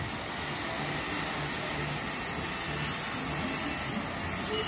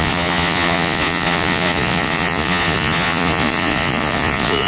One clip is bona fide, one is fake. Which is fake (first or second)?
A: second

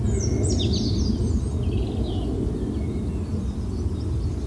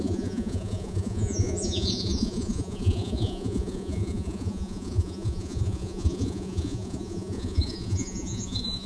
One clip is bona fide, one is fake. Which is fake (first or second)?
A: second